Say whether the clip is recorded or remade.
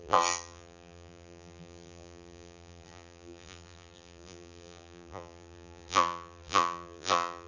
remade